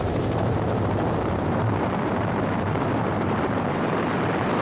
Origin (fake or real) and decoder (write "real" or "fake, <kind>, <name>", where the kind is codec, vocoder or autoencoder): fake, vocoder, BigVGAN v2